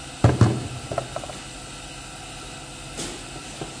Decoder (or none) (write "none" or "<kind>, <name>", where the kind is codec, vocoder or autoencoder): none